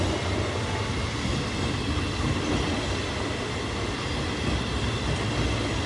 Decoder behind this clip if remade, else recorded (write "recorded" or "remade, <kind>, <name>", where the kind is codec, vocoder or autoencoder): recorded